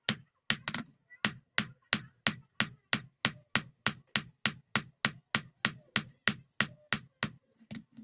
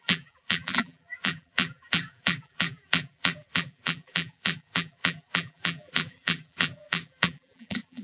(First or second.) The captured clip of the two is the first